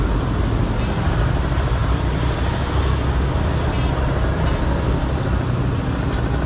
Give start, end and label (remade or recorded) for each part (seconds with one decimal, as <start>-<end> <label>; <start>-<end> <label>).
0.0-6.5 recorded